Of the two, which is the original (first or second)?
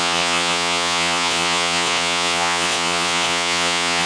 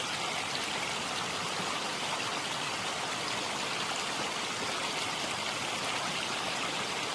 second